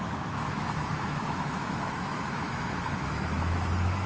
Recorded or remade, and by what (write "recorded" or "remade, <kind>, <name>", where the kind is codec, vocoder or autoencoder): remade, autoencoder, DAC-VAE